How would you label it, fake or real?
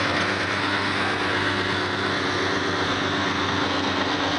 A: fake